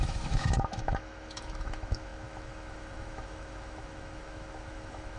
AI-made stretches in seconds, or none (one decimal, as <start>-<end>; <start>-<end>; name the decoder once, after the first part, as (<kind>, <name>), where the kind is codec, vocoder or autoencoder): 0.0-5.2 (autoencoder, DAC-VAE)